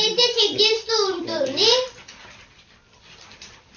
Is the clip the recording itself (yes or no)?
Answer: no